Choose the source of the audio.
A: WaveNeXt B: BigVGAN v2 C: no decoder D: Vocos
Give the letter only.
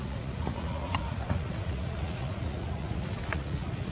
D